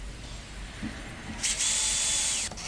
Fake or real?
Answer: real